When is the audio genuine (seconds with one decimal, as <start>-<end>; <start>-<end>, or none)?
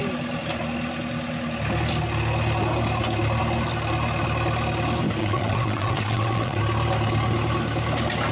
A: 0.0-5.2; 6.6-8.3